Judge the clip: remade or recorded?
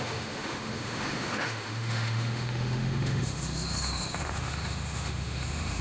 remade